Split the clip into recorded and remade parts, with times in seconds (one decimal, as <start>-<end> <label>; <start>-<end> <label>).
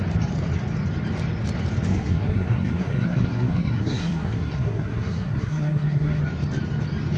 0.0-1.9 recorded; 1.9-6.2 remade; 6.2-7.2 recorded